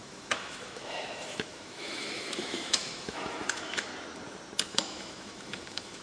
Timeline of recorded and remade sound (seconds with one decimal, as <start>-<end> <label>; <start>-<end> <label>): 0.0-3.9 remade; 3.9-4.7 recorded; 4.7-6.0 remade